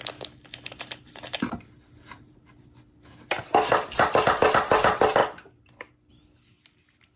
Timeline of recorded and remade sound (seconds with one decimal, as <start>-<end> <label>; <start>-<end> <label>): 0.0-7.2 recorded